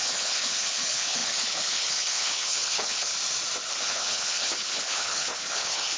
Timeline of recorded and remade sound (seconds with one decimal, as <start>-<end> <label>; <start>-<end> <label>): 0.0-3.1 remade; 3.1-3.7 recorded; 3.7-6.0 remade